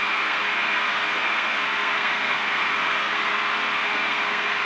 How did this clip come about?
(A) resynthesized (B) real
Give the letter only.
A